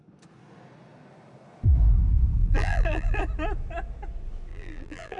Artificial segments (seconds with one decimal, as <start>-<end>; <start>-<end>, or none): 2.4-3.2; 4.5-5.2